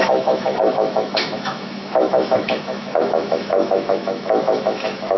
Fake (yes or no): yes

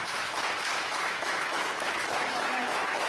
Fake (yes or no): yes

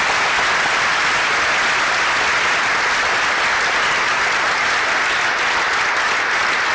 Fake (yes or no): no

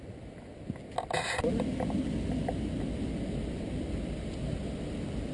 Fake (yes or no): no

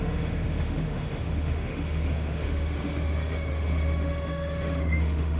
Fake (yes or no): yes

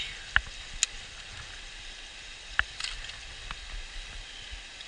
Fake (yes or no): no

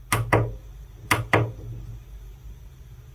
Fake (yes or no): no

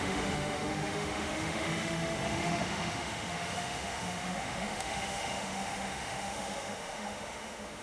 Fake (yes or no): yes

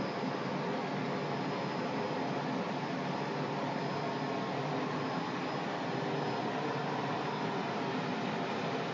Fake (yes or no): no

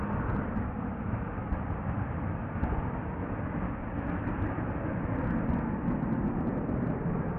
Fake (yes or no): no